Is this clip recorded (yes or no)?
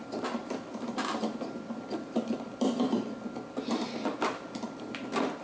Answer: yes